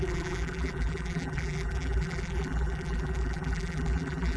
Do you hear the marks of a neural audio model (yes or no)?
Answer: yes